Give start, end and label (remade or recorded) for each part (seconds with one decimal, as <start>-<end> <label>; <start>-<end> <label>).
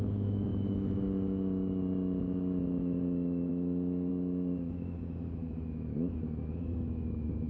0.0-7.5 remade